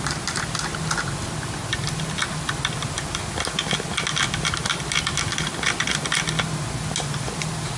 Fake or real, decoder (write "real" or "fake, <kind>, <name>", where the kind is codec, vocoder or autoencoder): real